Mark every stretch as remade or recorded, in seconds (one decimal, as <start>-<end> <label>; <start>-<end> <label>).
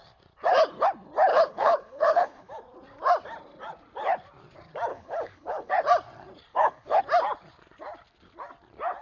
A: 0.0-1.3 recorded; 1.3-2.5 remade; 2.5-4.9 recorded; 4.9-5.7 remade; 5.7-6.5 recorded; 6.5-7.0 remade; 7.0-9.0 recorded